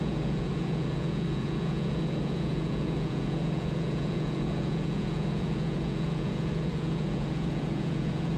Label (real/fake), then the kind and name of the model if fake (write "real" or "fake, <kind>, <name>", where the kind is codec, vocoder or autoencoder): fake, vocoder, Vocos